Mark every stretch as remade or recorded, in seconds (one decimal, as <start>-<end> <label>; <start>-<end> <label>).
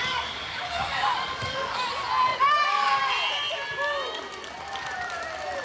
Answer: 0.0-1.9 remade; 1.9-2.3 recorded; 2.3-3.1 remade; 3.1-5.6 recorded